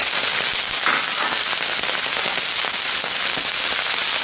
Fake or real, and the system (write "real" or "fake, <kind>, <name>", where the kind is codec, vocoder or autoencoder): real